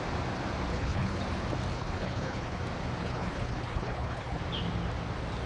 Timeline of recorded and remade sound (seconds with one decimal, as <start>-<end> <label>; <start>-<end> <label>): 0.0-0.7 recorded; 0.7-1.2 remade; 1.2-1.7 recorded; 1.7-2.6 remade; 2.6-3.0 recorded; 3.0-4.4 remade; 4.4-5.5 recorded